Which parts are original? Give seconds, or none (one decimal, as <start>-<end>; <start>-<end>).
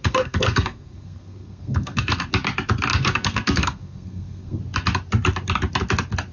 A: 2.3-2.9; 4.6-6.3